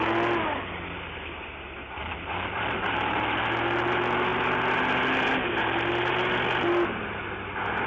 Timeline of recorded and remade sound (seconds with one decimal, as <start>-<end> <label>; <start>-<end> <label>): 0.0-7.9 recorded